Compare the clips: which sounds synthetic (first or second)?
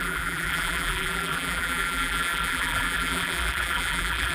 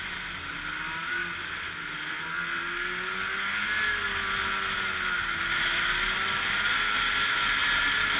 first